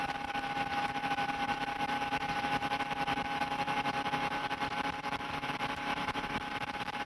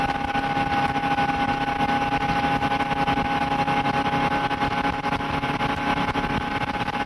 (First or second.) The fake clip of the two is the first